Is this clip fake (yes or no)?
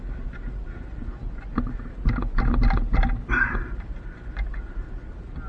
no